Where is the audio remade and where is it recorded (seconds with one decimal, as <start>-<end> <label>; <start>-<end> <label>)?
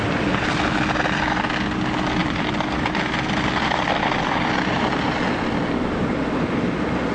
0.0-2.2 recorded; 2.2-5.1 remade; 5.1-7.1 recorded